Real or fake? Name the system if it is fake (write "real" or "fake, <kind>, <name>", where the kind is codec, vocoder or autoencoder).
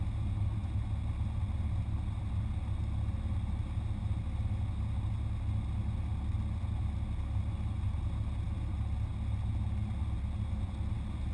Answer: real